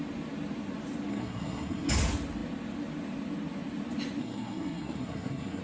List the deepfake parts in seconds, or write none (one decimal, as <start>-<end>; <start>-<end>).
1.1-1.9; 4.2-5.6